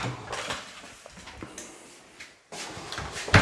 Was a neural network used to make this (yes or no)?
no